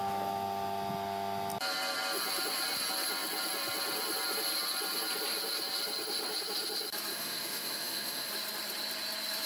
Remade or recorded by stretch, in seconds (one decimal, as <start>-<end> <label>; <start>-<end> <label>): 0.0-7.1 recorded; 7.1-8.3 remade; 8.3-9.5 recorded